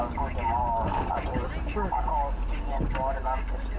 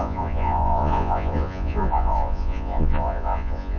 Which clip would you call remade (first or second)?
second